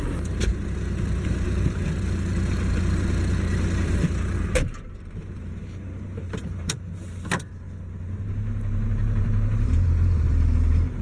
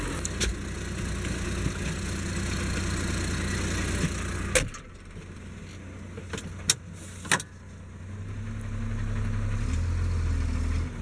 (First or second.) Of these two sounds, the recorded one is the second